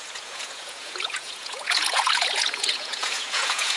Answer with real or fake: fake